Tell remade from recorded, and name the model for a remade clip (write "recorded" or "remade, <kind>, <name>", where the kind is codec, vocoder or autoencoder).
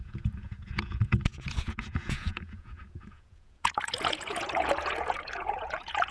remade, vocoder, Vocos